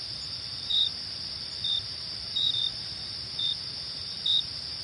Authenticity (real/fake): fake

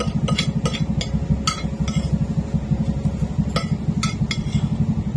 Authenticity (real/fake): real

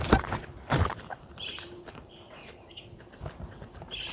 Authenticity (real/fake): fake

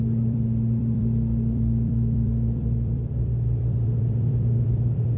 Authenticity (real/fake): fake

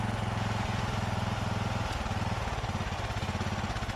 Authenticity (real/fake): real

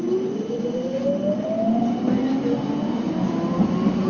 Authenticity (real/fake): real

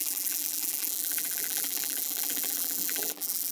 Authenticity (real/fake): fake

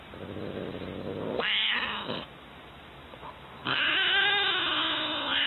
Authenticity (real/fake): real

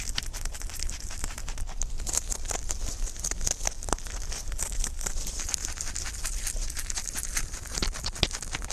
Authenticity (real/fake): real